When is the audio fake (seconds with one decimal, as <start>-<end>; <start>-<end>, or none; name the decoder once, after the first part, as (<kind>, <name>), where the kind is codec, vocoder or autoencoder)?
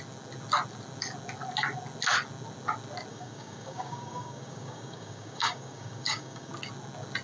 3.1-6.5 (codec, DAC)